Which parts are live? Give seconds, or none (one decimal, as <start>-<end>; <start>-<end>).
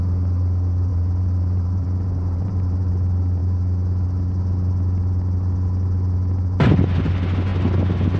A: 0.0-0.9; 2.9-8.2